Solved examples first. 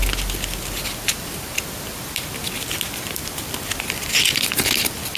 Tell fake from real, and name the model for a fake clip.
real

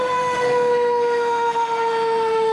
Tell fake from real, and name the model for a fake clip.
fake, autoencoder, DAC-VAE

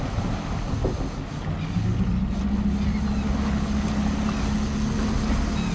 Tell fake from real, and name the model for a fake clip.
real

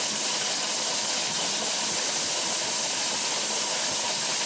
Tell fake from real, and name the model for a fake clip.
real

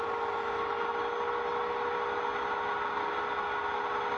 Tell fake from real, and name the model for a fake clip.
real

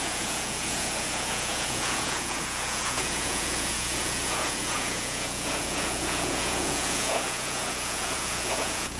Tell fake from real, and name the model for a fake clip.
fake, vocoder, Vocos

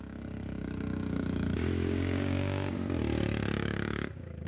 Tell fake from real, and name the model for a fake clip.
fake, codec, DAC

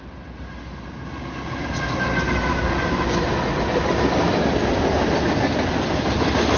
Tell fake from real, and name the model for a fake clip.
real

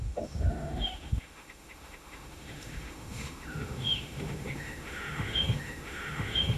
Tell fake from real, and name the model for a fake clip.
fake, autoencoder, DAC-VAE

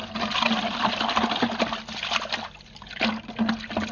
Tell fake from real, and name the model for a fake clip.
real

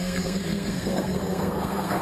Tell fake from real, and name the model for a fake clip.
fake, codec, SNAC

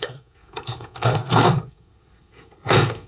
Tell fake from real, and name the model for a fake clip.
fake, codec, SNAC